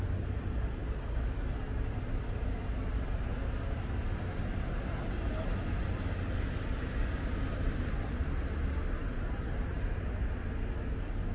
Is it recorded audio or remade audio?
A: recorded